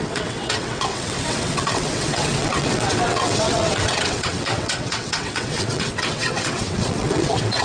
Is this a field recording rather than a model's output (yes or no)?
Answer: no